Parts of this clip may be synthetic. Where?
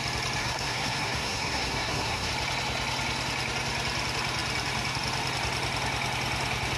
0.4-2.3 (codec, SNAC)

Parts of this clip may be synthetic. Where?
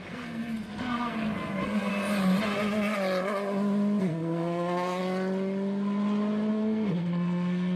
0.0-1.9 (codec, SNAC); 4.0-5.0; 6.5-7.8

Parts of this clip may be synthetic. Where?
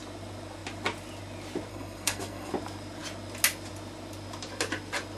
1.7-2.5 (codec, SNAC)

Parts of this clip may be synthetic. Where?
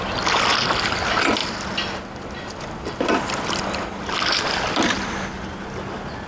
none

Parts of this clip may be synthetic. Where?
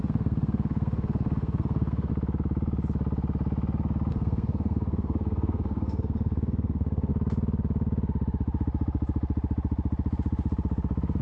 0.0-2.1 (codec, SNAC); 4.1-7.1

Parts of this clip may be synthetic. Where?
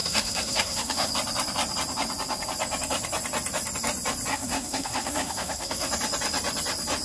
0.0-1.1 (codec, SNAC); 4.3-5.9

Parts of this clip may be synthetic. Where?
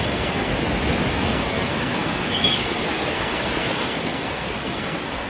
0.0-0.5 (codec, SNAC); 1.1-5.3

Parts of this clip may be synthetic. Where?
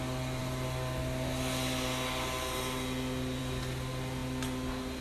none